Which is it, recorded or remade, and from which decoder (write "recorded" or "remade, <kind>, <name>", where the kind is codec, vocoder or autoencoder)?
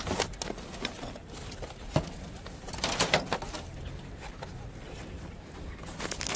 recorded